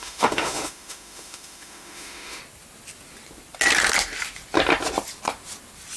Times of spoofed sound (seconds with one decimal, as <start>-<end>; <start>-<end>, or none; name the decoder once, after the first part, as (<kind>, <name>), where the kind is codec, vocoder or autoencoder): 0.0-2.4 (autoencoder, DAC-VAE)